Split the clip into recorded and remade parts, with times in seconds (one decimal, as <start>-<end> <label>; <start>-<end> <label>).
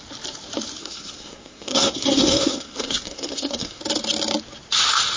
0.0-0.8 recorded; 0.8-3.8 remade; 3.8-5.2 recorded